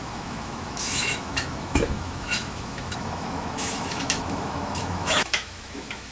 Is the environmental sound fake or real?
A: fake